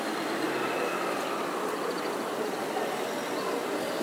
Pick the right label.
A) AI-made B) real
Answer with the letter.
B